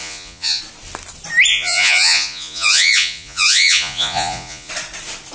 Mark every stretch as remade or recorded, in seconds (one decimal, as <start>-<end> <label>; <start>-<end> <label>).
0.0-0.6 remade; 0.6-1.5 recorded; 1.5-4.7 remade; 4.7-5.3 recorded